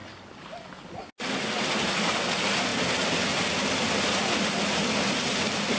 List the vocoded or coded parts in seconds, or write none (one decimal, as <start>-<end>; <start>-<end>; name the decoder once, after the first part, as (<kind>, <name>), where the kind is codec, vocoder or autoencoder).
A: none